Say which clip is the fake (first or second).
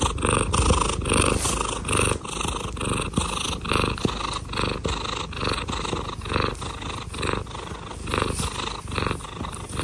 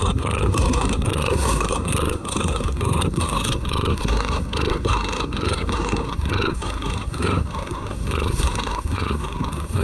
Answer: second